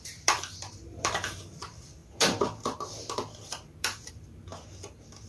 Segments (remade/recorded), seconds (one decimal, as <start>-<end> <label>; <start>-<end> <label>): 0.0-4.5 remade; 4.5-5.3 recorded